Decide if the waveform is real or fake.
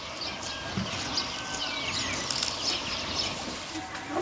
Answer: real